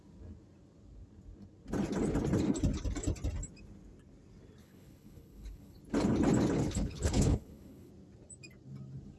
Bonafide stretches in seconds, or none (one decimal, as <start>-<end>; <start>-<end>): 0.0-4.6; 5.8-6.6; 7.9-9.2